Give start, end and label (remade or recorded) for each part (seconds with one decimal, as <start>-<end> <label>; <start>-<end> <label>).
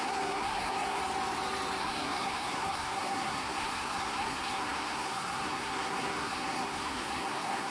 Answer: 0.0-1.0 remade; 1.0-1.8 recorded; 1.8-7.7 remade